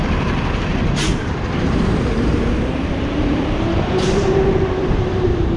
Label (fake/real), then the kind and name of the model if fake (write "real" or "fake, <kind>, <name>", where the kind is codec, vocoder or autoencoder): fake, vocoder, BigVGAN v2